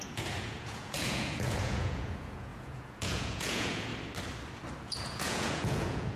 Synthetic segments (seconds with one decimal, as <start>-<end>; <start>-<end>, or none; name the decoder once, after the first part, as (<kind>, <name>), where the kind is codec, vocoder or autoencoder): 0.0-3.9 (vocoder, Vocos); 4.8-6.2